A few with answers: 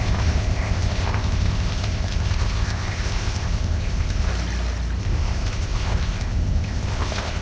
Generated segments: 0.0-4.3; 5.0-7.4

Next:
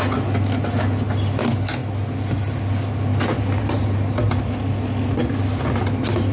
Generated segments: none

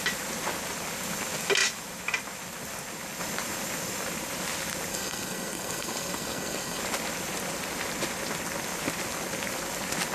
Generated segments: 4.9-6.8

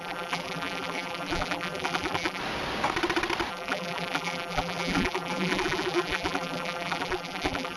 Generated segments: 0.0-2.4; 3.5-7.8

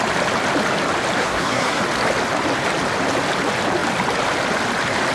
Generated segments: 1.2-1.8

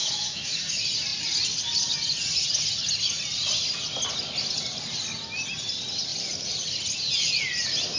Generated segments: 0.0-0.6

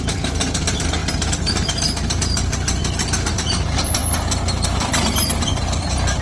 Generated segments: 0.0-2.8; 3.3-4.0; 5.4-6.2

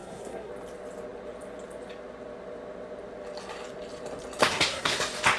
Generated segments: 0.0-0.5; 4.4-5.0